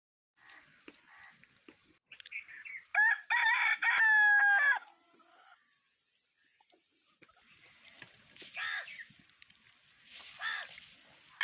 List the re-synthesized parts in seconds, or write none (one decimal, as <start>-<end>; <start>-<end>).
4.7-9.8